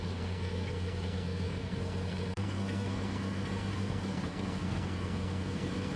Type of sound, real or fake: fake